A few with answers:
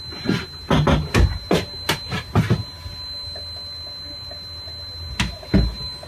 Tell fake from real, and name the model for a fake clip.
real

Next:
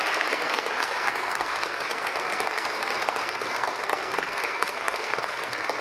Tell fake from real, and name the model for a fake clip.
fake, codec, SNAC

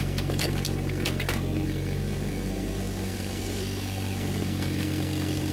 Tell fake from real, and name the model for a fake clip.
fake, codec, SNAC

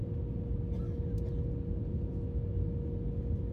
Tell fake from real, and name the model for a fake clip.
real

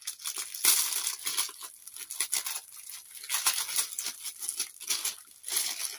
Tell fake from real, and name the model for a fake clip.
real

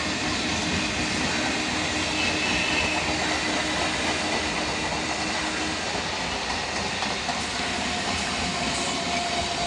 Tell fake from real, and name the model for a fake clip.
real